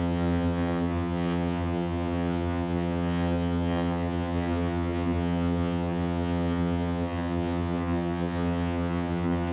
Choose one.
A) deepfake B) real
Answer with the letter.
A